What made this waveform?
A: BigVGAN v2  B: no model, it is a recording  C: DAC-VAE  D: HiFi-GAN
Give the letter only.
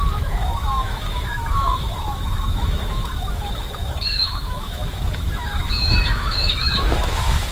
C